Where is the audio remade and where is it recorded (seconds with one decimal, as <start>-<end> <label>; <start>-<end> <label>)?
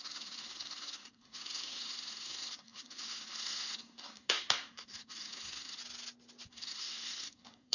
0.0-5.8 remade; 5.8-6.5 recorded; 6.5-7.7 remade